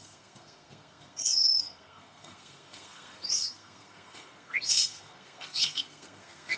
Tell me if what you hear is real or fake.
fake